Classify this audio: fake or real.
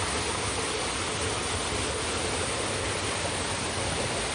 real